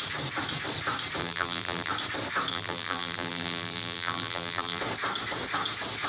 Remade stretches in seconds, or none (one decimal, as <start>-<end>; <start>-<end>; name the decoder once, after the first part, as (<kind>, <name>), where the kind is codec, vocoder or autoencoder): 1.2-1.9 (vocoder, BigVGAN v2); 2.5-4.8